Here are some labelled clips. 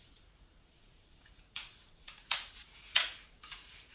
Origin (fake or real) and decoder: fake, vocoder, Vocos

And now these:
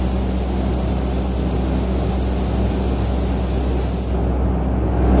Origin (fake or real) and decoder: real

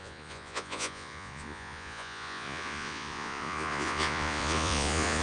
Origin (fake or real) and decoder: fake, vocoder, Vocos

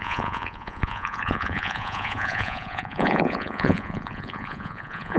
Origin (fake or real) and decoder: fake, vocoder, Vocos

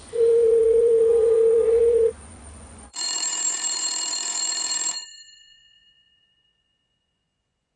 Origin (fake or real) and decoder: fake, vocoder, Vocos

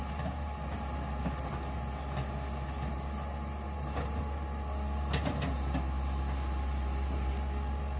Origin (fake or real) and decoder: real